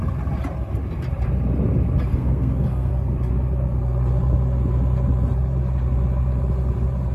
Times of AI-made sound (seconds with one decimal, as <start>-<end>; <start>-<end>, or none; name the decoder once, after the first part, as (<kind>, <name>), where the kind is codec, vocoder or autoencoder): 2.1-2.9 (codec, SNAC)